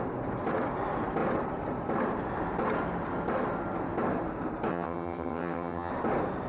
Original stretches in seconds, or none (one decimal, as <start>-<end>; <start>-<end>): 0.0-4.7; 5.9-6.5